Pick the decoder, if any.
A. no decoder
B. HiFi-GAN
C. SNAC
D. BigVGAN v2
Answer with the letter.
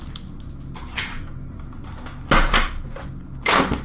A